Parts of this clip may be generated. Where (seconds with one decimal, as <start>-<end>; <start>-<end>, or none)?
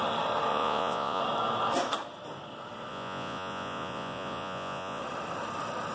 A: 0.5-1.2; 2.9-5.0